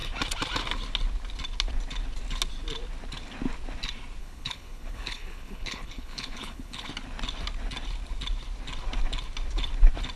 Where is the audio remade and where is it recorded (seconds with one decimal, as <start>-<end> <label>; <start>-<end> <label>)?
0.0-4.2 recorded; 4.2-6.9 remade; 6.9-10.2 recorded

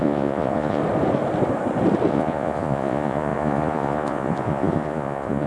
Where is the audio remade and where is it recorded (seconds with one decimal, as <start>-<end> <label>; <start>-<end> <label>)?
0.0-0.8 remade; 0.8-2.1 recorded; 2.1-5.5 remade

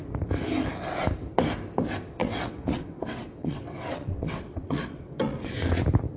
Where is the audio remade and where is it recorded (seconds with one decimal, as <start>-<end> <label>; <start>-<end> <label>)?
0.0-2.2 recorded; 2.2-5.8 remade; 5.8-6.2 recorded

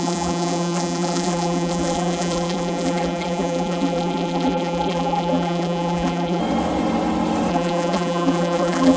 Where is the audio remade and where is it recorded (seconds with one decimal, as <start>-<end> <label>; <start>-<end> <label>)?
0.0-6.4 remade; 6.4-7.5 recorded; 7.5-9.0 remade

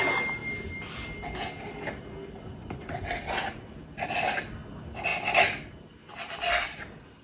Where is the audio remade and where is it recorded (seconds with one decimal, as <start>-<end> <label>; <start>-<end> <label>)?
0.0-7.2 recorded

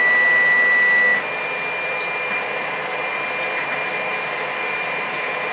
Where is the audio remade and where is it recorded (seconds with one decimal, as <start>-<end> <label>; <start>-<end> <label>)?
0.0-5.5 recorded